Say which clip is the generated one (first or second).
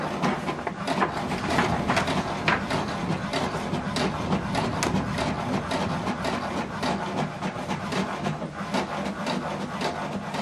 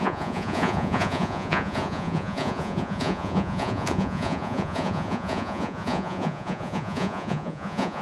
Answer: second